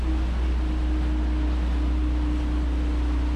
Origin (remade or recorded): recorded